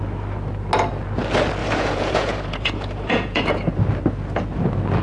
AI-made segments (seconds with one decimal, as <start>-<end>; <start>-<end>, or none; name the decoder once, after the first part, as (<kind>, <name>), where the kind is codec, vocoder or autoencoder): 1.6-3.7 (vocoder, Vocos)